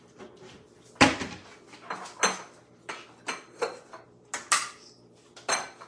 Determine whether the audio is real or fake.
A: real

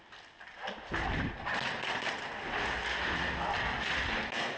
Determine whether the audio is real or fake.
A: real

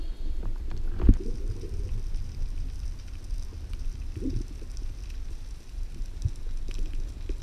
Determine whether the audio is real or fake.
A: real